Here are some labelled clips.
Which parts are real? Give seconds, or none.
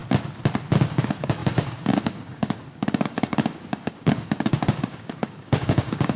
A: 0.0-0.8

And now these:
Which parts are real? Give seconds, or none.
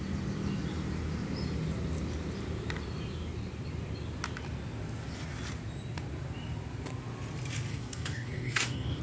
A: 0.0-7.7